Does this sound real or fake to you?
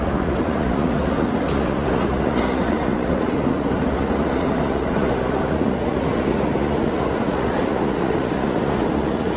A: fake